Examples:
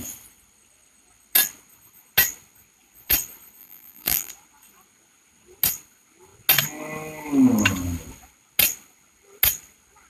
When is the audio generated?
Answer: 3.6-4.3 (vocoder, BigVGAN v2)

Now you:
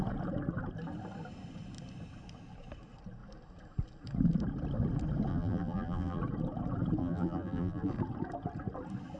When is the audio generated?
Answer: 5.3-6.2 (vocoder, BigVGAN v2); 7.0-7.9

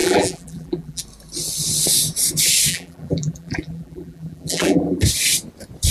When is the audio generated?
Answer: 0.0-1.0 (vocoder, BigVGAN v2); 2.7-5.0

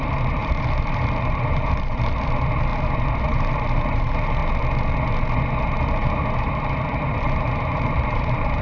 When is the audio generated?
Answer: 0.0-2.7 (vocoder, BigVGAN v2); 3.2-4.4; 5.7-8.6